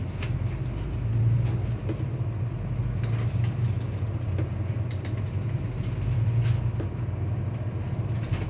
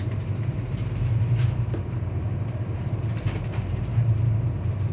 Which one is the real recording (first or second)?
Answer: first